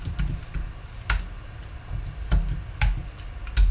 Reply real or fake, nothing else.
real